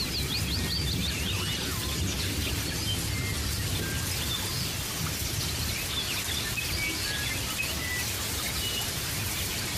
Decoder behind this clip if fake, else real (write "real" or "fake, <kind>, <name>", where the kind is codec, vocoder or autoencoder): real